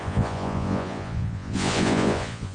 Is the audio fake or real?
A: fake